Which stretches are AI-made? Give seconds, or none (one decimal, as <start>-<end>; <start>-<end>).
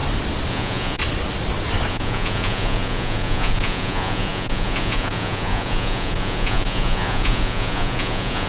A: 0.5-1.0; 1.9-8.5